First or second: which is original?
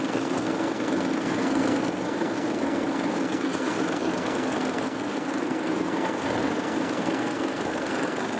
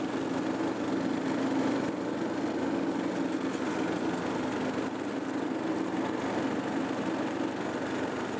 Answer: second